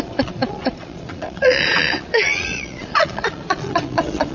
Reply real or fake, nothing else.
fake